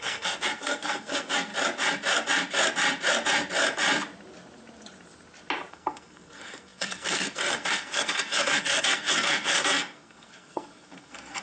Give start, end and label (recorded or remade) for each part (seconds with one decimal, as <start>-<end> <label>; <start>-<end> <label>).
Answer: 0.0-1.5 remade; 1.5-5.7 recorded; 5.7-11.4 remade